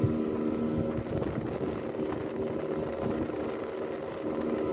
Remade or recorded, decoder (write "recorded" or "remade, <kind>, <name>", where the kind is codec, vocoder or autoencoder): recorded